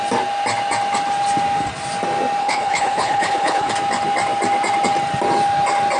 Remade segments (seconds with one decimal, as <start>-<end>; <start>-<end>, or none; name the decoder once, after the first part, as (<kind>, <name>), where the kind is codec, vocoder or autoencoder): 2.4-3.7 (codec, HILCodec)